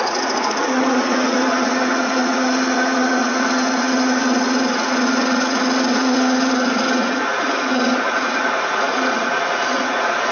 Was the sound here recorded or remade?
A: remade